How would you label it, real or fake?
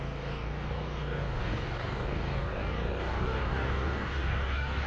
fake